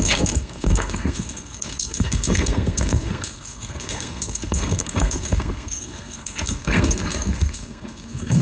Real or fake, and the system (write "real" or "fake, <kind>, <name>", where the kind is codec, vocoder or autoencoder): fake, codec, SNAC